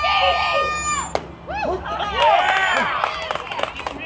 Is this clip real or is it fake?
real